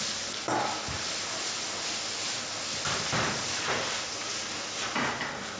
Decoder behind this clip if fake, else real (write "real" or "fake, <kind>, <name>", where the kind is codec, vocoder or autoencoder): real